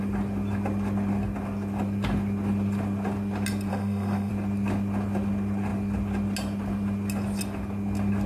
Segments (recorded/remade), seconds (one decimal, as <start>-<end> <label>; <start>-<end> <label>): 0.0-3.7 recorded; 3.7-4.3 remade; 4.3-8.3 recorded